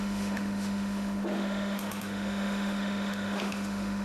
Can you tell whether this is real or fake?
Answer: fake